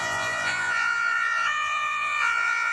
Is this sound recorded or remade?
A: remade